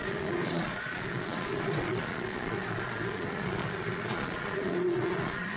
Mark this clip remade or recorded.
remade